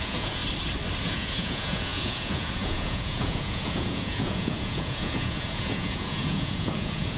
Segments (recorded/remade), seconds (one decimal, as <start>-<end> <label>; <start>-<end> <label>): 0.0-0.4 remade; 0.4-1.0 recorded; 1.0-7.2 remade